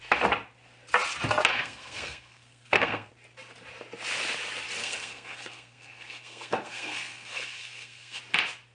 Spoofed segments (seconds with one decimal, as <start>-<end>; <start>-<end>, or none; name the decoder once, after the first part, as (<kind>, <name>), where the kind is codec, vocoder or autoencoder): 1.5-3.1 (codec, SNAC); 4.8-8.2